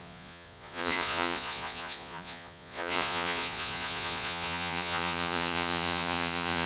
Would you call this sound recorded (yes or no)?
no